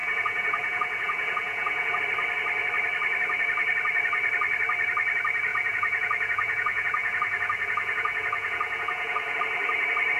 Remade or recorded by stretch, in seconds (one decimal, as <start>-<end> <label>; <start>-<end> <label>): 0.0-2.0 remade; 2.0-5.5 recorded; 5.5-9.4 remade; 9.4-10.2 recorded